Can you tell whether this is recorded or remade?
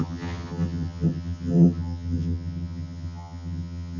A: remade